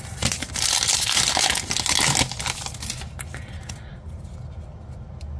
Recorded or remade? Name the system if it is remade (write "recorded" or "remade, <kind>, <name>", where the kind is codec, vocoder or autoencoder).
recorded